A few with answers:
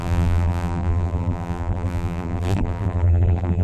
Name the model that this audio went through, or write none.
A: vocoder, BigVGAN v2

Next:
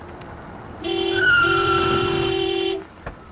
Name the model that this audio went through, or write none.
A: vocoder, BigVGAN v2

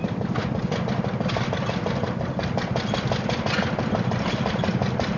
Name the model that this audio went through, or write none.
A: none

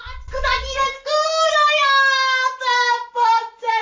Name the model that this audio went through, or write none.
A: none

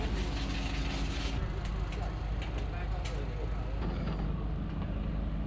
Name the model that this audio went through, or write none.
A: none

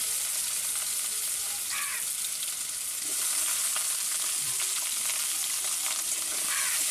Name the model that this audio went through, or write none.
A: none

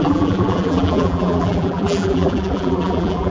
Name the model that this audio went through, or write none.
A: vocoder, BigVGAN v2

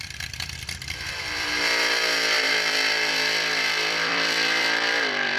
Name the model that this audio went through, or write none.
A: vocoder, BigVGAN v2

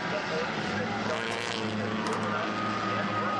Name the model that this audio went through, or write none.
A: none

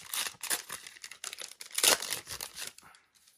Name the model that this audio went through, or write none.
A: none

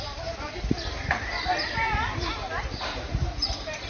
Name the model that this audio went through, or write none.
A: vocoder, BigVGAN v2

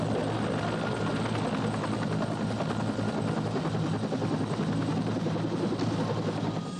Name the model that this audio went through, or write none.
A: none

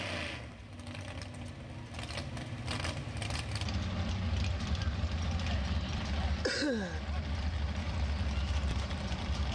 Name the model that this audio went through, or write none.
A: none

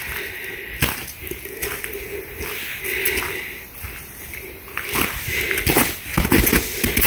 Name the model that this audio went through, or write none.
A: none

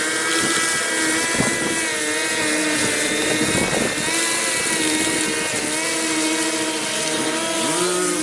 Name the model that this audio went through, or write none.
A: none